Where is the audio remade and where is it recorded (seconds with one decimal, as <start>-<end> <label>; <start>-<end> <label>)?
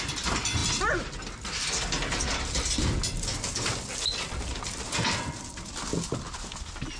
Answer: 0.0-7.0 recorded